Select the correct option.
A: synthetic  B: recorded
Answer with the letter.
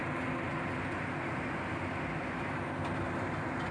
B